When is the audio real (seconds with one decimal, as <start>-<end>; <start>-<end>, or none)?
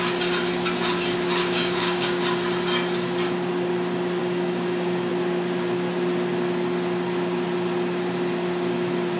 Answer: 0.0-1.4; 2.2-4.2; 5.1-9.2